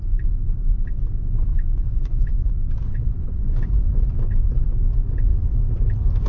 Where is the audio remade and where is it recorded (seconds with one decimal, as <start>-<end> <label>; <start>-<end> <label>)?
0.0-1.5 recorded; 1.5-4.7 remade; 4.7-6.3 recorded